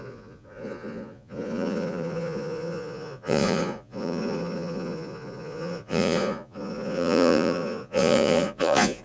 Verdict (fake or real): fake